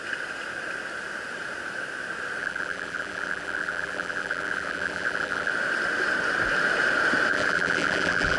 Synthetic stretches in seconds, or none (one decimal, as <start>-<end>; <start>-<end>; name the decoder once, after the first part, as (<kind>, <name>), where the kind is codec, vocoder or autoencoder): 2.4-5.5 (vocoder, BigVGAN v2); 7.3-8.4